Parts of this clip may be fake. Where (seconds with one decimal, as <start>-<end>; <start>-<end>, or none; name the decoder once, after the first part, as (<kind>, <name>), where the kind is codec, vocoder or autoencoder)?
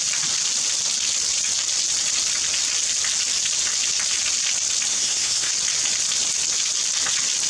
4.9-5.5 (codec, SNAC)